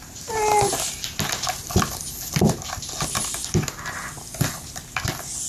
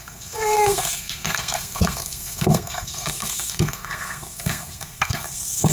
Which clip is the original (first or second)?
first